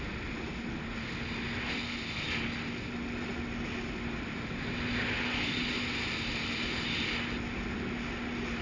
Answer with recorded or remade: recorded